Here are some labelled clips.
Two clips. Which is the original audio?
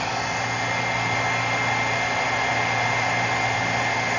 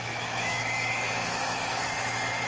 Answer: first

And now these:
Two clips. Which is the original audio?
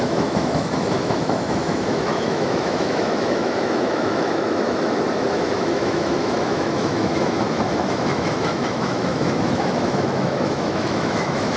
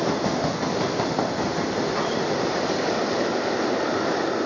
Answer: second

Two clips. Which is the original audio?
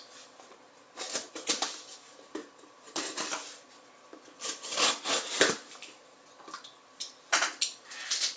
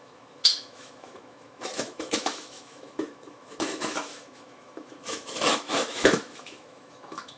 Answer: first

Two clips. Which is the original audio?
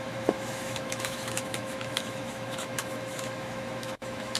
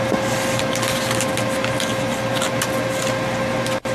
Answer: second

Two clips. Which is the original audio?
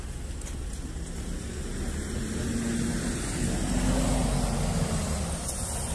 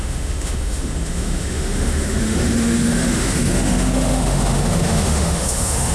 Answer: first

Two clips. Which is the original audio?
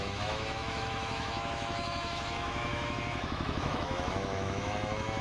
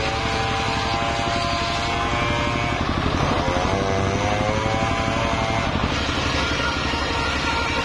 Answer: second